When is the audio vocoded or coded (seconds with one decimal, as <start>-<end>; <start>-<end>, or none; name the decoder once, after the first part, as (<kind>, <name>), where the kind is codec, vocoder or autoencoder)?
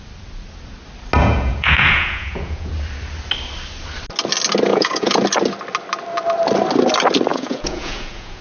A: 1.2-2.7 (vocoder, Vocos); 4.7-5.2; 7.3-8.4